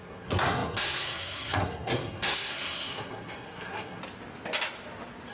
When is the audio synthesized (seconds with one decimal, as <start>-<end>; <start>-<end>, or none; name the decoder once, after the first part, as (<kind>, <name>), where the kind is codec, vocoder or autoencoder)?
0.0-4.0 (codec, SNAC)